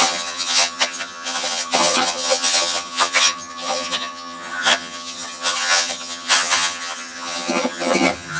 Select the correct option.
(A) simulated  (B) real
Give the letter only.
A